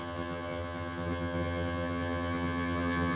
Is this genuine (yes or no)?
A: no